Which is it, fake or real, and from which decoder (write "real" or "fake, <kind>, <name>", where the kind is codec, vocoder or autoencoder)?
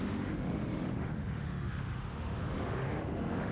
fake, autoencoder, DAC-VAE